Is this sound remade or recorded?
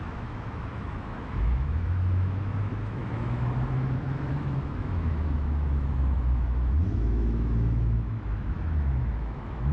remade